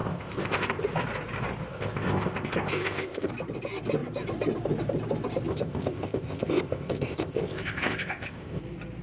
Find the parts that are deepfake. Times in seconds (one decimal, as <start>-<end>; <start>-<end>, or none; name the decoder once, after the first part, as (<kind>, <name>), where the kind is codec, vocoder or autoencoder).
0.0-0.8 (codec, ZipCodec); 1.7-3.3; 5.5-8.6